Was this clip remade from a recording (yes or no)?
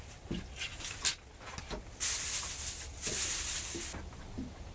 no